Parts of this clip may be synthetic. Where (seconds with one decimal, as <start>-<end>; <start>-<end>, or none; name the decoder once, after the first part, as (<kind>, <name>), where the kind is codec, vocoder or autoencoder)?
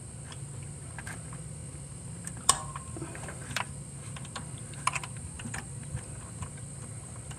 0.0-7.4 (vocoder, BigVGAN v2)